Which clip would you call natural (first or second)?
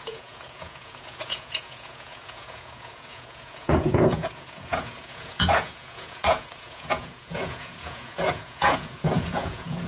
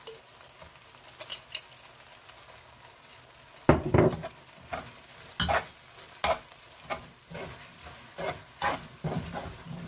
second